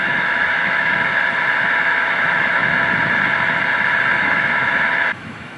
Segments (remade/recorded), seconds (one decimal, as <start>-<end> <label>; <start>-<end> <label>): 0.0-1.1 remade; 1.1-1.6 recorded; 1.6-2.6 remade; 2.6-4.1 recorded; 4.1-5.6 remade